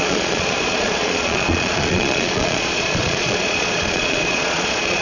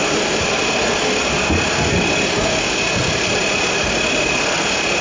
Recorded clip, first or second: second